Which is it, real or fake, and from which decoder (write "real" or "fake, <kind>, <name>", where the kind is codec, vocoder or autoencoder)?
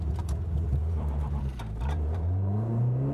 fake, vocoder, BigVGAN v2